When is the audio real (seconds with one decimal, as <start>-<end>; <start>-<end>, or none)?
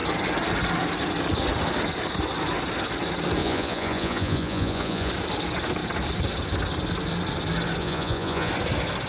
0.0-3.4; 5.1-7.8; 8.5-9.1